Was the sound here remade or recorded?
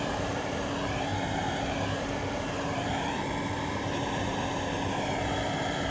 remade